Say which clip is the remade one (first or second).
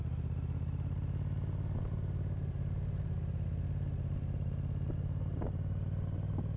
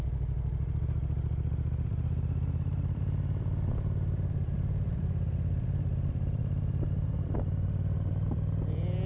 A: second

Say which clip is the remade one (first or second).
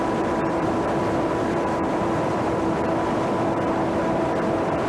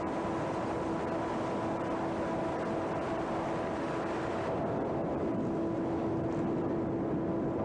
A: first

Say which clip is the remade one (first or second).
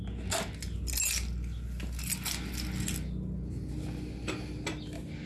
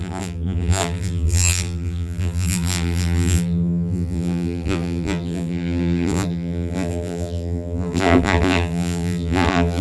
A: second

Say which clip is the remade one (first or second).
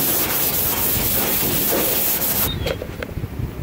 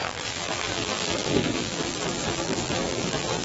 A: second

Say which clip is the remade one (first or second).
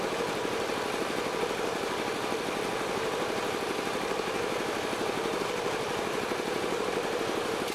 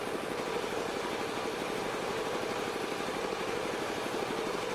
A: first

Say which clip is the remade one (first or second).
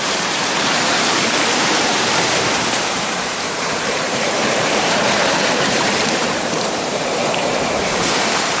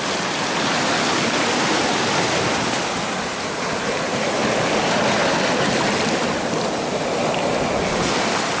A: first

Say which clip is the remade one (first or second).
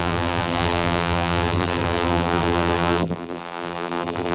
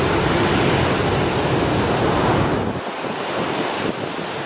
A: first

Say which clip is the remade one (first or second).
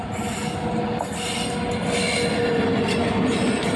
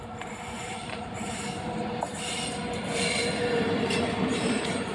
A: second